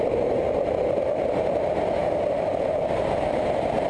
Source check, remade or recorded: recorded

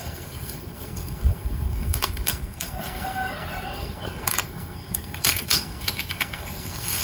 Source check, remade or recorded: remade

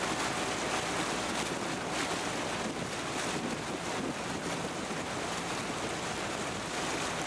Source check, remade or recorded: recorded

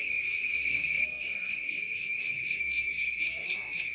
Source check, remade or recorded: remade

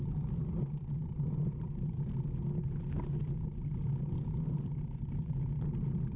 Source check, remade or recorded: recorded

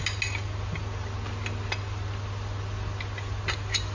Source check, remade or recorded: recorded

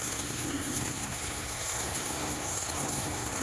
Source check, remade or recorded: remade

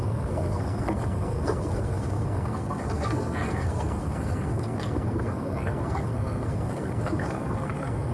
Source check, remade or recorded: remade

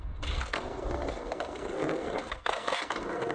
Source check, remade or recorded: remade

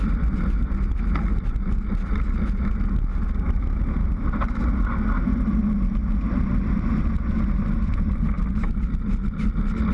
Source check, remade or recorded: recorded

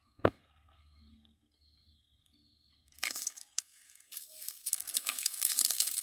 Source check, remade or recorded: remade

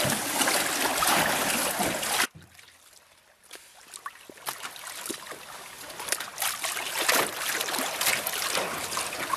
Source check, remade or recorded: recorded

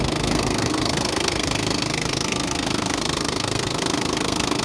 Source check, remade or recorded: remade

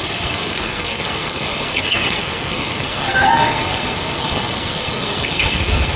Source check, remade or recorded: remade